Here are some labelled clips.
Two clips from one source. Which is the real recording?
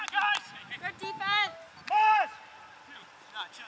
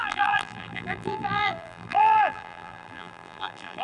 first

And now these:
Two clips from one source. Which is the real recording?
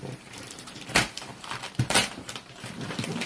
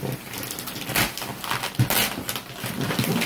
second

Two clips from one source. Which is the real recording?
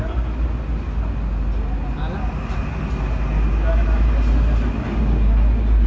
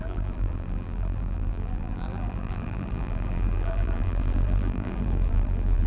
first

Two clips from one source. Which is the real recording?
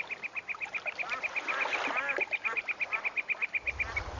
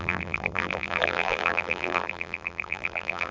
first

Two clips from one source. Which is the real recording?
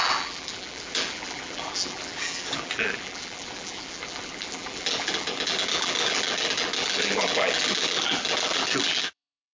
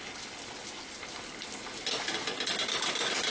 second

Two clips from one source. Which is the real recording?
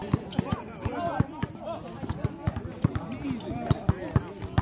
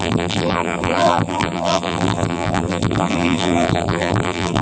first